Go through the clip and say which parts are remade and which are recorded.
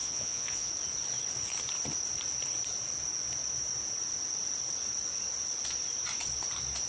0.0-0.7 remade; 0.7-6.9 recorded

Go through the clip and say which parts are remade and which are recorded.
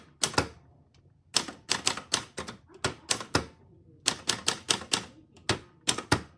0.0-6.4 recorded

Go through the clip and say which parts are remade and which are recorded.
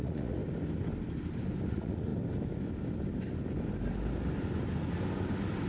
0.0-0.4 remade; 0.4-1.7 recorded; 1.7-2.1 remade; 2.1-5.7 recorded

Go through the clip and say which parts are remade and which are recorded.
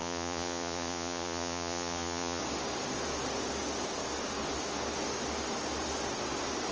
0.0-2.4 remade; 2.4-6.7 recorded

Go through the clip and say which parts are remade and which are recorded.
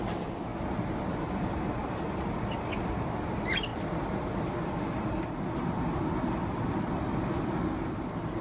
0.0-8.4 recorded